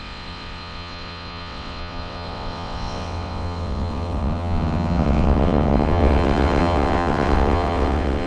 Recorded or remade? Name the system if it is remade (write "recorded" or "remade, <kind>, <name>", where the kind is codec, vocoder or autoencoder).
remade, vocoder, WaveNeXt